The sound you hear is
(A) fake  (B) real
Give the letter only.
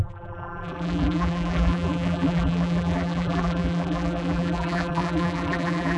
A